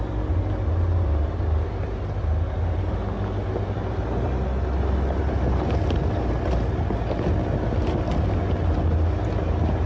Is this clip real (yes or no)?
yes